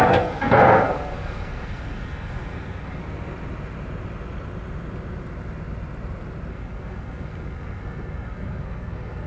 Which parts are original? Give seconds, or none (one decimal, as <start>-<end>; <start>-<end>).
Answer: 3.0-6.5